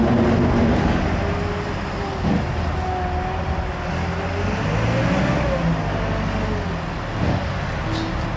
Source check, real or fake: real